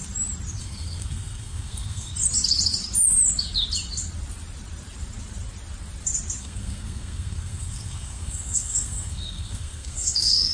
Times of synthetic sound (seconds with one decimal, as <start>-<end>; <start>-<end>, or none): 0.6-2.1; 6.4-10.5